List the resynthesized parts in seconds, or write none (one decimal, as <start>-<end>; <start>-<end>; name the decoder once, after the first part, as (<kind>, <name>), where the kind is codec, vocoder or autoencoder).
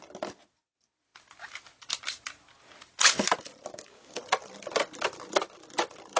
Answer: 3.7-4.2 (codec, DAC)